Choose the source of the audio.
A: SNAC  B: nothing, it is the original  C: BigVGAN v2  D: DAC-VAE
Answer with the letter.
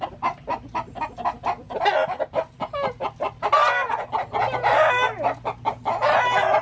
B